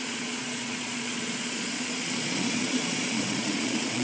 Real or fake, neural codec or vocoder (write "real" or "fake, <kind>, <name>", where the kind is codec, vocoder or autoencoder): fake, vocoder, Vocos